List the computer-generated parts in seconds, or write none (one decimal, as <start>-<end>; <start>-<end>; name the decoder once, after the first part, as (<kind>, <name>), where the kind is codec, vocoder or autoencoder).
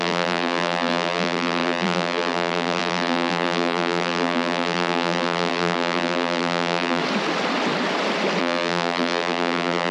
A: 0.0-7.0 (vocoder, BigVGAN v2); 8.4-9.9